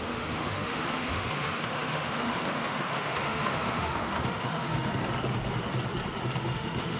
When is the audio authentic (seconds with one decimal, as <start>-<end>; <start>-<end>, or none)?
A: 4.9-6.4